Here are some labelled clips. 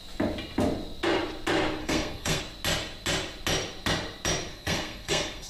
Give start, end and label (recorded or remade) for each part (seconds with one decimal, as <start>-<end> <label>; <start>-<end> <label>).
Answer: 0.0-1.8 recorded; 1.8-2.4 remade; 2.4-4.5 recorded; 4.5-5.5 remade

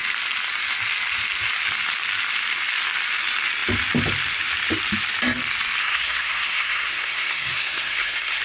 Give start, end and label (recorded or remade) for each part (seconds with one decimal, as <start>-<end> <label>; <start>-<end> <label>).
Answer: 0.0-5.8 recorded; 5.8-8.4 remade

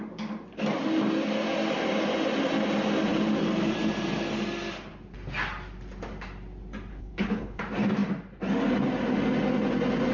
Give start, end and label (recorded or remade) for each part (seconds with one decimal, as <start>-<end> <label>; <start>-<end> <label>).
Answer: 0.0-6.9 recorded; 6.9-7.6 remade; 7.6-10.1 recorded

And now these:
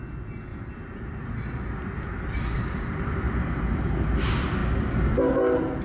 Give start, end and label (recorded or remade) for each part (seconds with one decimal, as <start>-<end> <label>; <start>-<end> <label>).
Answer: 0.0-0.5 recorded; 0.5-3.6 remade; 3.6-5.8 recorded

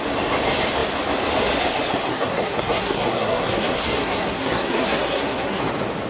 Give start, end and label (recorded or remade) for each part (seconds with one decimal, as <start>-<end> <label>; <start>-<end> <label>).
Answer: 0.0-2.1 recorded; 2.1-5.6 remade; 5.6-6.1 recorded

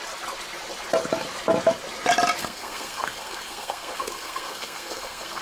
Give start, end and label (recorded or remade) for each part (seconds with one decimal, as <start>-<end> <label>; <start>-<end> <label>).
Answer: 0.0-2.4 recorded; 2.4-5.4 remade

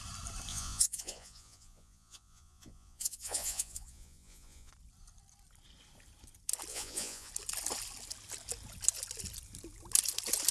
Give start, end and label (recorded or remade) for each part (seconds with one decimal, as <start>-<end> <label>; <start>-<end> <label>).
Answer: 0.0-0.5 recorded; 0.5-4.7 remade; 4.7-6.7 recorded; 6.7-7.3 remade; 7.3-10.5 recorded

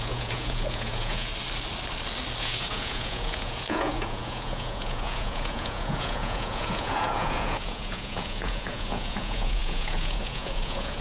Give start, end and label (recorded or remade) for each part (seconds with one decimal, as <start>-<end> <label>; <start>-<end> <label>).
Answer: 0.0-1.3 remade; 1.3-2.4 recorded; 2.4-11.0 remade